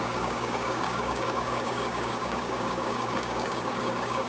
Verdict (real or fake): fake